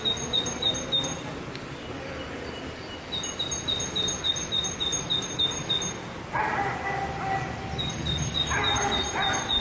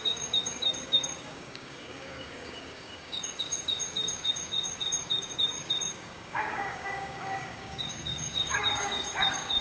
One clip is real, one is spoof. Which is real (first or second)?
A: first